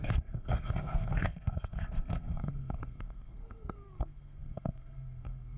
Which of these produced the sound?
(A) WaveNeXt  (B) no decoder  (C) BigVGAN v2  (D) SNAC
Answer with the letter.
D